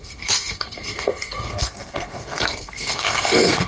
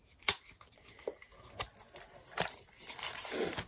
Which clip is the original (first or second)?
second